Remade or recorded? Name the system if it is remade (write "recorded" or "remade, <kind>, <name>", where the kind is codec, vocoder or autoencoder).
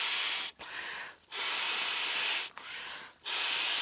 recorded